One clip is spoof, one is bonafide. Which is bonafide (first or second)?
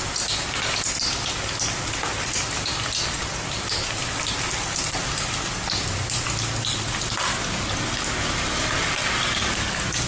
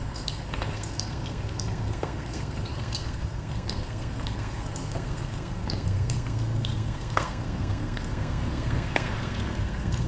first